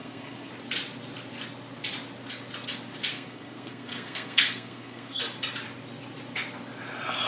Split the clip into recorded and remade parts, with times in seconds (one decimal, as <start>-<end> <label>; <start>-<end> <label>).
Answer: 0.0-0.5 remade; 0.5-3.1 recorded; 3.1-5.2 remade; 5.2-7.3 recorded